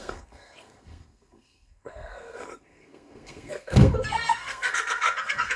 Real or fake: fake